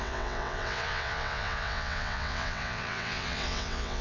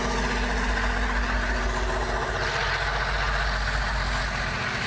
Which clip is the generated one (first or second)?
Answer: first